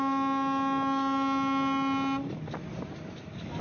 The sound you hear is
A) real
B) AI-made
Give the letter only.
A